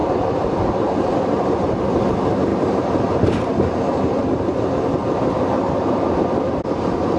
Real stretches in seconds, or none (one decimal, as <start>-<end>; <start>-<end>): 2.1-2.5; 4.2-7.2